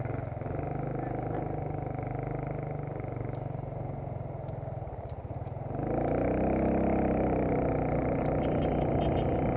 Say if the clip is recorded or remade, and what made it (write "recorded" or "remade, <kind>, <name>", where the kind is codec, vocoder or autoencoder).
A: recorded